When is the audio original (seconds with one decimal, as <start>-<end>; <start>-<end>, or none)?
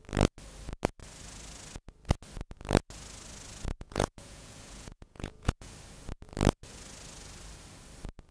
0.0-3.7; 5.7-8.3